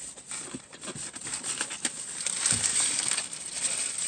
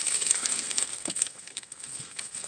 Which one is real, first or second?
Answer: first